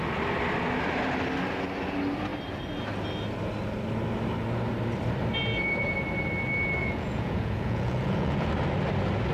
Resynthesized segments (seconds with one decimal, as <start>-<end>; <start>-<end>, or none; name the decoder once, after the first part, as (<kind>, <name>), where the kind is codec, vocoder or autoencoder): 6.8-8.5 (vocoder, Vocos)